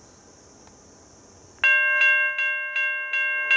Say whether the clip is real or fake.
real